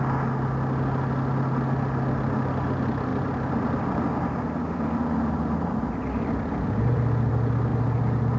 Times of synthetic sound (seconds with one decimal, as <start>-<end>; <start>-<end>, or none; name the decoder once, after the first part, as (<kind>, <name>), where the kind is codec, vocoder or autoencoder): none